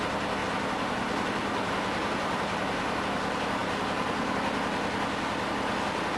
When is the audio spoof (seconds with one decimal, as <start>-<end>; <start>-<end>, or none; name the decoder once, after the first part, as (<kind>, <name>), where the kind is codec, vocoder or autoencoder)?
0.4-3.0 (vocoder, BigVGAN v2); 3.6-4.3